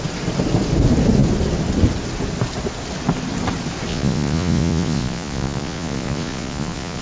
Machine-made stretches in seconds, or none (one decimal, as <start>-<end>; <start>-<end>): 3.9-7.0